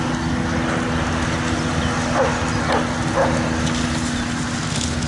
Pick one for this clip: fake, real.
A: real